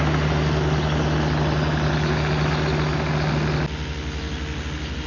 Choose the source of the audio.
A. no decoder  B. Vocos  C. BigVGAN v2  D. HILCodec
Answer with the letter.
A